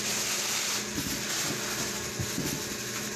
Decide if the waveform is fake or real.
real